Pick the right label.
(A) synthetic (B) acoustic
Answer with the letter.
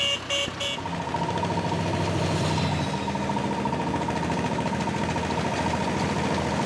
B